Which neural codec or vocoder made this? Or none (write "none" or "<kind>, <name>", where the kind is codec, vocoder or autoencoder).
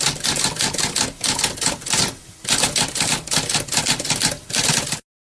none